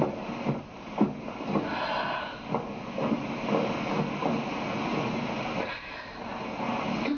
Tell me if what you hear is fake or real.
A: real